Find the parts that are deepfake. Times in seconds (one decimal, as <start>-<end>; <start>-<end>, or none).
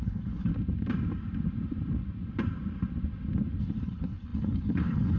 0.0-0.5; 3.6-5.2